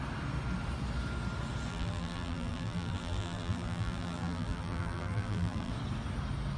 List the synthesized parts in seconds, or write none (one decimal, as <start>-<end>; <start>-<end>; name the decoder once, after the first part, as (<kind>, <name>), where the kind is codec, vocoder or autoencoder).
1.7-5.7 (vocoder, BigVGAN v2)